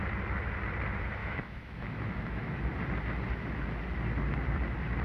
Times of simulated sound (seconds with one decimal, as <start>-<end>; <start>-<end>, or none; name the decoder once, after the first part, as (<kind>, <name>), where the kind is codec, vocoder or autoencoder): 1.2-2.6 (autoencoder, DAC-VAE)